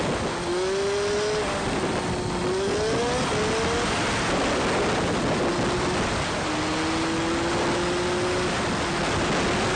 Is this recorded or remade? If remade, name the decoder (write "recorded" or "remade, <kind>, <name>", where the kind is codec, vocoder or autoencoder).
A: recorded